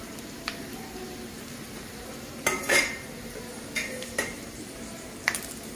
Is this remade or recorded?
remade